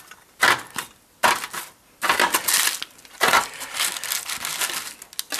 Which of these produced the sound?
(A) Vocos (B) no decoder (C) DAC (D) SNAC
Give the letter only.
B